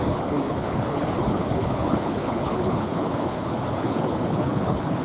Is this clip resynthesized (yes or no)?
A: yes